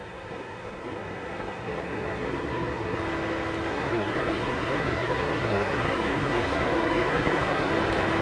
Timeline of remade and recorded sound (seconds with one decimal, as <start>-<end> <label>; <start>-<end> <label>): 0.0-3.0 remade; 3.0-3.7 recorded; 3.7-7.7 remade; 7.7-8.2 recorded